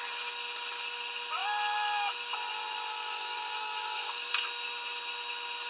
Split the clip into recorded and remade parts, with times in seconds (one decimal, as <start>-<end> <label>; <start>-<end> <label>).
0.0-2.9 recorded; 2.9-4.3 remade; 4.3-5.7 recorded